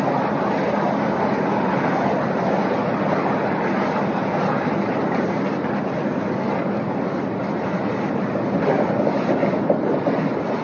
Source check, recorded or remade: recorded